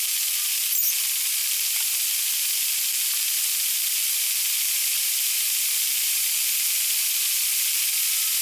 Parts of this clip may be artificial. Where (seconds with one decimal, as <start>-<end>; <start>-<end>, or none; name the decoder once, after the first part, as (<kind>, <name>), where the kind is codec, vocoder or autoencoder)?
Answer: none